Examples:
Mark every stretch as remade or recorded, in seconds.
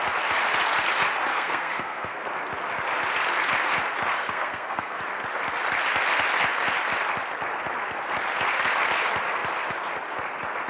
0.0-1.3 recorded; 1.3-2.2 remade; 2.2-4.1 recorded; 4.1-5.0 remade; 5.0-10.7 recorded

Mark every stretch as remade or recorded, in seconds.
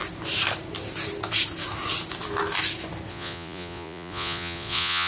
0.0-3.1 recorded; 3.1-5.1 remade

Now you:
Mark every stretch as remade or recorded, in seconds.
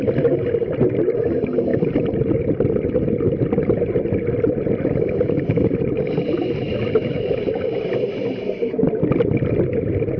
0.0-1.7 recorded; 1.7-2.4 remade; 2.4-10.2 recorded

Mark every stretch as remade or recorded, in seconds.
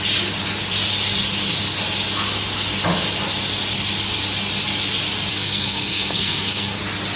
0.0-5.3 recorded; 5.3-6.8 remade; 6.8-7.2 recorded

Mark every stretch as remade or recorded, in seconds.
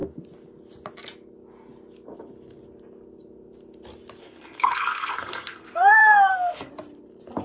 0.0-4.2 recorded; 4.2-6.7 remade; 6.7-7.4 recorded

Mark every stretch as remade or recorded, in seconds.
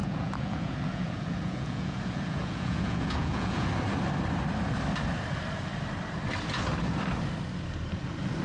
0.0-3.7 remade; 3.7-8.4 recorded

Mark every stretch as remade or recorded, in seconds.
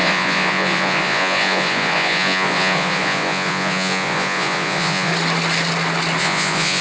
0.0-5.1 remade; 5.1-6.2 recorded; 6.2-6.8 remade